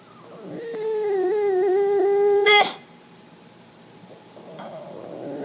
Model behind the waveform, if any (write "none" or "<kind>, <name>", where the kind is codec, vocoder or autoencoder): vocoder, BigVGAN v2